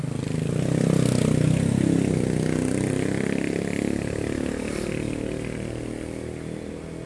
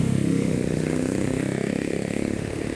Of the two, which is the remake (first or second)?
second